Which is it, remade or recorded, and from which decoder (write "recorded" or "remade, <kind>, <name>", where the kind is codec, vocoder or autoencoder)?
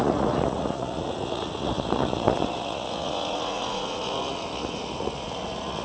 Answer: remade, vocoder, Vocos